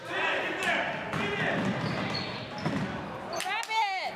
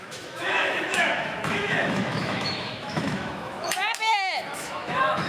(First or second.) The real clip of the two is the first